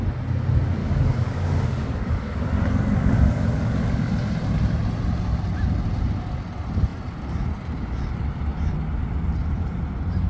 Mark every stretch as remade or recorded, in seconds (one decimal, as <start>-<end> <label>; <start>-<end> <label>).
0.0-0.8 recorded; 0.8-4.1 remade; 4.1-10.3 recorded